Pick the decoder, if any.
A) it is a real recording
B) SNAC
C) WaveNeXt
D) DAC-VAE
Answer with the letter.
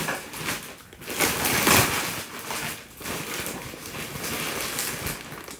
A